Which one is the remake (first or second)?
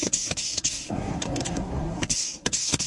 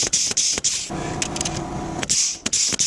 first